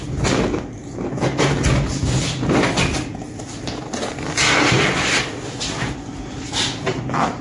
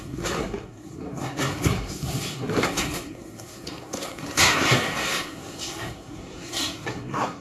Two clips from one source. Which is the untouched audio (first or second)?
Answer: first